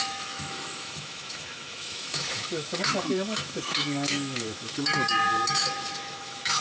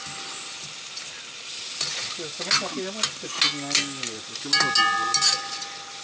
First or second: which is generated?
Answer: first